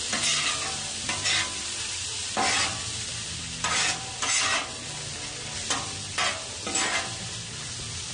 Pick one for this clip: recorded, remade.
recorded